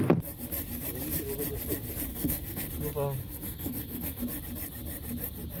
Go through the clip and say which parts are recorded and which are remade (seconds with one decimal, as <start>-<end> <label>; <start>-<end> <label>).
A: 0.0-2.1 recorded; 2.1-2.7 remade; 2.7-3.2 recorded; 3.2-4.2 remade; 4.2-5.6 recorded